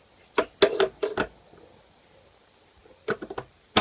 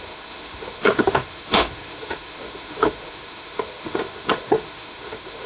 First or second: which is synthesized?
second